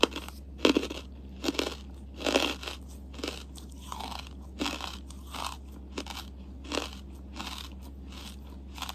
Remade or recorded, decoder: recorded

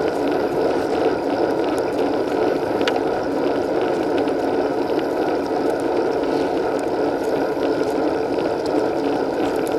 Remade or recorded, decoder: recorded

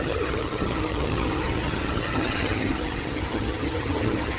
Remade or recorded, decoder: remade, vocoder, HiFi-GAN